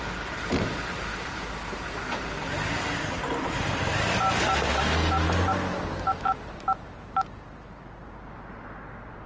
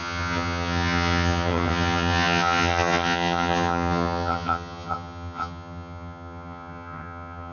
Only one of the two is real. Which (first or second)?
first